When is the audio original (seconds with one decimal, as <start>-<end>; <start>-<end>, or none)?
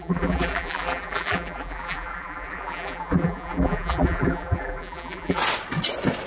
5.4-6.3